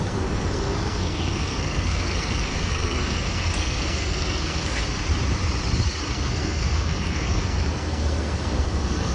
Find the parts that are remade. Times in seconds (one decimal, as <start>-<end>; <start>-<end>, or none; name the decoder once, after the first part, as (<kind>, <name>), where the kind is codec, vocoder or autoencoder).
0.0-4.8 (codec, SNAC); 6.1-9.1

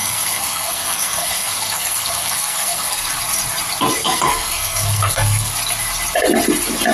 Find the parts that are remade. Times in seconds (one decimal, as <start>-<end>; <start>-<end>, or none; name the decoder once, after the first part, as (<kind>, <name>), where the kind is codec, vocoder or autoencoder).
0.0-3.1 (codec, SNAC); 4.0-5.5

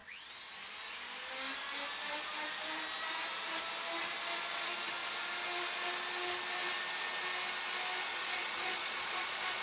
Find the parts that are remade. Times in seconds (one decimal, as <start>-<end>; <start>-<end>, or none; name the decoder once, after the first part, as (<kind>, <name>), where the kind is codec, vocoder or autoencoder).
8.1-9.6 (vocoder, Vocos)

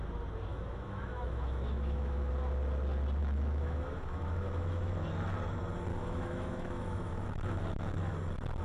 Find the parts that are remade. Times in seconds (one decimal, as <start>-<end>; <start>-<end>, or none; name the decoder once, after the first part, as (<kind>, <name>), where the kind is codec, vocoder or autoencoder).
0.5-2.3 (autoencoder, DAC-VAE); 3.2-4.9; 5.9-8.1

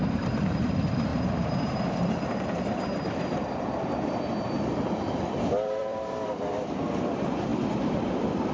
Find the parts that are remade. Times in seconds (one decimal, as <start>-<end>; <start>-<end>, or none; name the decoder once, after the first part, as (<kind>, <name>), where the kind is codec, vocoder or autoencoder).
0.0-1.1 (vocoder, BigVGAN v2); 2.6-7.5; 8.0-8.5